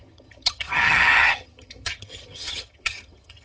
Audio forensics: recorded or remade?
remade